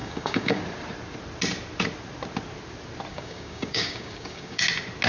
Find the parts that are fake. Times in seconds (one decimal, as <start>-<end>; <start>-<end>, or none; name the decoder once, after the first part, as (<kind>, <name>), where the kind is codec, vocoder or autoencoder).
0.0-0.6 (codec, DAC); 3.1-4.6